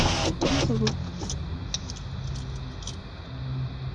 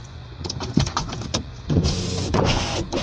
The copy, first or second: second